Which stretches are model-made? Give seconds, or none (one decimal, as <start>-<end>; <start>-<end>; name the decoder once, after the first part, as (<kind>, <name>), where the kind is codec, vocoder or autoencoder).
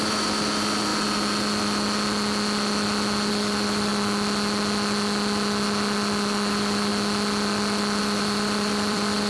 0.0-0.9 (vocoder, BigVGAN v2); 3.3-3.9; 6.5-6.9; 8.0-9.3